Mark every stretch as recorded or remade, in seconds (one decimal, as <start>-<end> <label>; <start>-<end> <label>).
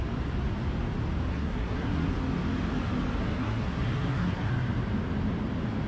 0.0-1.3 recorded; 1.3-2.1 remade; 2.1-3.2 recorded; 3.2-4.5 remade; 4.5-5.9 recorded